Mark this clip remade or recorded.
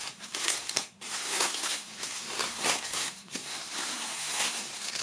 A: remade